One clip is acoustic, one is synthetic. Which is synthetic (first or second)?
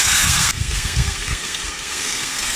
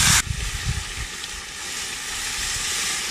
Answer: first